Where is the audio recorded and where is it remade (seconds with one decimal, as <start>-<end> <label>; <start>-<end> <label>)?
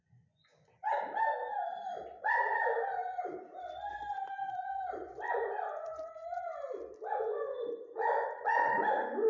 0.0-0.5 remade; 0.5-3.9 recorded; 3.9-6.5 remade; 6.5-7.1 recorded; 7.1-9.3 remade